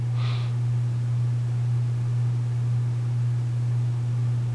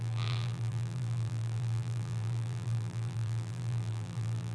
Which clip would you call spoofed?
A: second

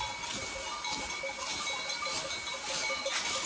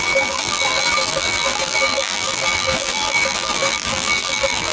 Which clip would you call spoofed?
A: second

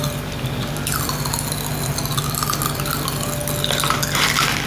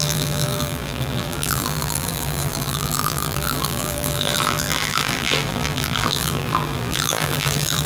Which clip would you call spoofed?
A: second